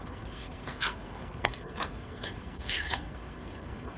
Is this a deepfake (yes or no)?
yes